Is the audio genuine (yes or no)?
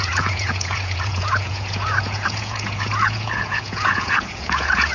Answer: no